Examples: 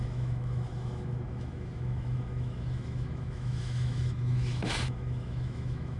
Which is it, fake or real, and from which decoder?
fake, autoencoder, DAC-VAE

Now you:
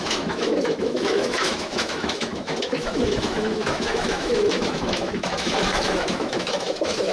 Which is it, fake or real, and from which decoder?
fake, autoencoder, DAC-VAE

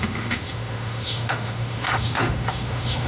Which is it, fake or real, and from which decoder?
fake, autoencoder, DAC-VAE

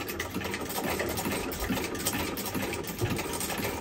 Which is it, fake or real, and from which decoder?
real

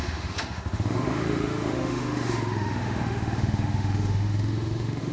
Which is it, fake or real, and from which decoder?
fake, autoencoder, DAC-VAE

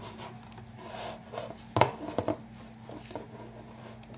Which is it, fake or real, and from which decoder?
real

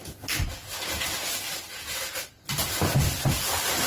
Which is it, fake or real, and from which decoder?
real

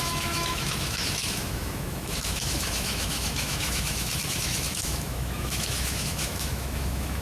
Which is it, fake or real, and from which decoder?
fake, autoencoder, DAC-VAE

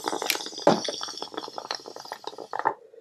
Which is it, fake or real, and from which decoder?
real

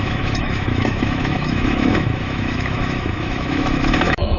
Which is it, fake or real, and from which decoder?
fake, autoencoder, DAC-VAE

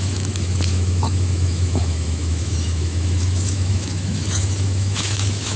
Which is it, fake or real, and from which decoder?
fake, autoencoder, DAC-VAE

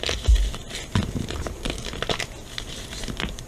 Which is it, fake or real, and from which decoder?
real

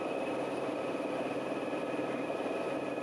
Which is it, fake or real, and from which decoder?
real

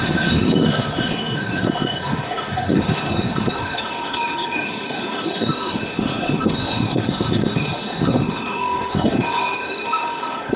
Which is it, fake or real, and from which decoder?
fake, autoencoder, DAC-VAE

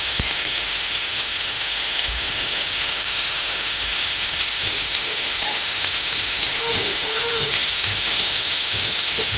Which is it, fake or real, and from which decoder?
fake, autoencoder, DAC-VAE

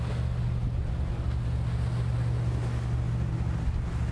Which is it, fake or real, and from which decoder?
real